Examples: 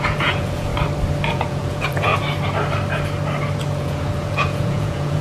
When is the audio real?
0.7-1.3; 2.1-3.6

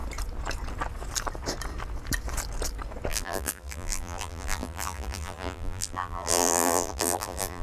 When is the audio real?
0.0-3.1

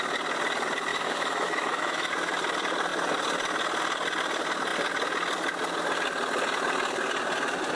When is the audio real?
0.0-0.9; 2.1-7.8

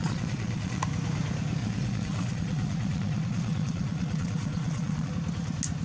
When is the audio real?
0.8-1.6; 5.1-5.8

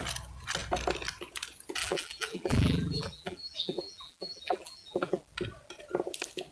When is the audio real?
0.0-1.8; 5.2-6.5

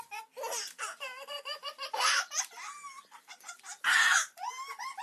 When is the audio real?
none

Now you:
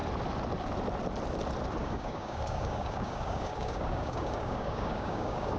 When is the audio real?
0.0-1.8

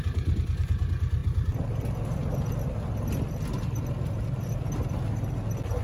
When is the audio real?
0.0-5.8